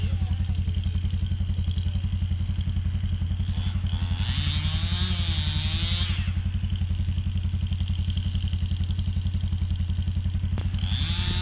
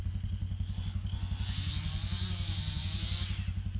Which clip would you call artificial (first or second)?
second